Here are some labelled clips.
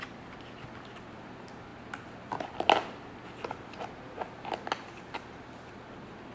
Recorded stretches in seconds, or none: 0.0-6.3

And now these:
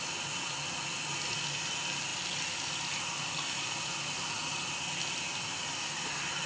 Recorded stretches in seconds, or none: 0.0-6.5

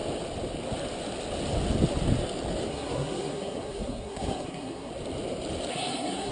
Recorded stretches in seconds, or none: 0.0-2.7; 4.9-5.7